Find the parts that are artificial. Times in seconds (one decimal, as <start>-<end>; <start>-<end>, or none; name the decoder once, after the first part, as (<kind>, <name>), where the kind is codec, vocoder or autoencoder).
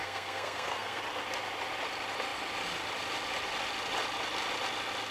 0.0-1.0 (codec, SNAC)